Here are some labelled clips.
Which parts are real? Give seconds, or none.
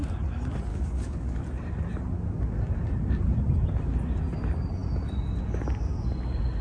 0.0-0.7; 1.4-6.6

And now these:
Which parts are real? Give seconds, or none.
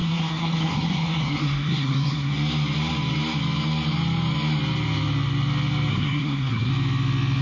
2.3-5.9; 6.7-7.4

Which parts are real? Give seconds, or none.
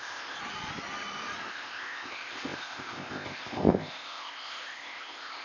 0.4-1.5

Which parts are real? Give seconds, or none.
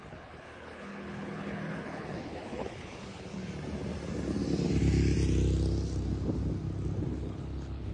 3.4-7.1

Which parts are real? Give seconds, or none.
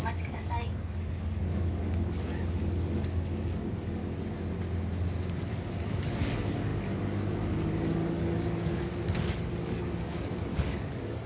4.0-5.5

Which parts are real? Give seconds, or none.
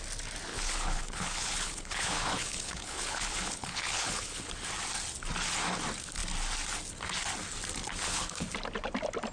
0.0-0.5; 4.5-8.0; 8.5-9.3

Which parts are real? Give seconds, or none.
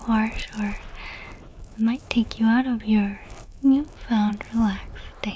0.0-1.5; 4.3-5.4